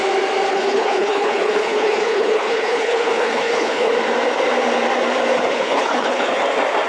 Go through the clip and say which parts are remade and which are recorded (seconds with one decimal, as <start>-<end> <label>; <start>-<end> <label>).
0.0-0.5 recorded; 0.5-3.9 remade; 3.9-5.5 recorded; 5.5-6.3 remade; 6.3-6.9 recorded